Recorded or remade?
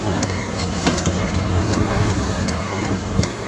remade